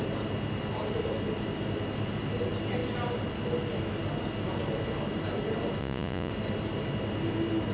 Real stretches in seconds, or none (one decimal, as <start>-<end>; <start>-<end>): 0.0-5.8; 6.3-7.7